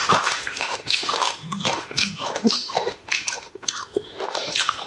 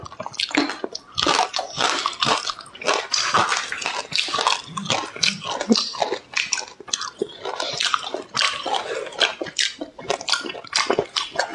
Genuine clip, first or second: second